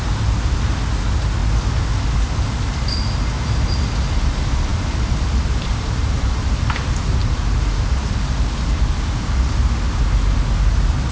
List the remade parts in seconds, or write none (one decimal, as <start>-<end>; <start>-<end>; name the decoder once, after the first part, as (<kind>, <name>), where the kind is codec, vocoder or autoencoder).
4.7-6.8 (vocoder, BigVGAN v2); 7.2-9.0

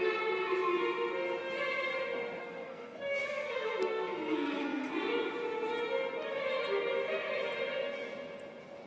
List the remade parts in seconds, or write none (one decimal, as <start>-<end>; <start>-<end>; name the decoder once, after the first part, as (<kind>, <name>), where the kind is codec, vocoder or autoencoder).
2.4-4.9 (codec, SNAC)

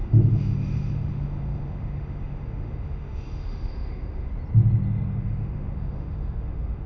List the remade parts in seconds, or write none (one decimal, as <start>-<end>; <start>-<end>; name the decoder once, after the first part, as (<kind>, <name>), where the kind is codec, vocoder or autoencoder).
0.0-4.3 (autoencoder, DAC-VAE); 5.2-6.9

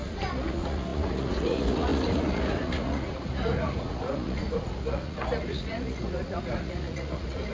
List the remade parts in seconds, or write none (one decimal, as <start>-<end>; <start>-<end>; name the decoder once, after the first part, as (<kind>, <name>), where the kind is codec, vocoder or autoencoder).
0.0-7.5 (vocoder, Vocos)

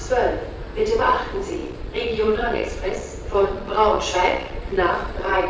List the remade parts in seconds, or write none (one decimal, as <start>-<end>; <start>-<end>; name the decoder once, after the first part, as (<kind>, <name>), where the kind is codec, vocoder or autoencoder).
1.0-5.5 (vocoder, Vocos)

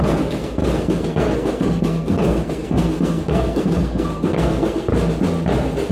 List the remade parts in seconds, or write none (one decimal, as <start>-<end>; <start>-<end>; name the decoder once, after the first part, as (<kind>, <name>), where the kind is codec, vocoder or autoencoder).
0.0-4.9 (codec, SNAC)

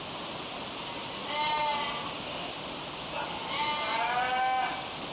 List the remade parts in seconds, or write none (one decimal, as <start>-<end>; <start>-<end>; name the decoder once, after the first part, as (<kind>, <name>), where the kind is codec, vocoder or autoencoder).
none